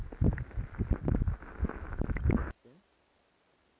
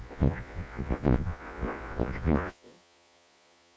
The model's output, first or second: second